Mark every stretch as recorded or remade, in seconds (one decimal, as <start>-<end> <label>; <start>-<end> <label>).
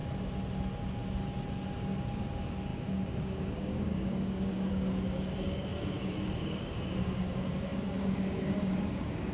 0.0-1.8 recorded; 1.8-9.3 remade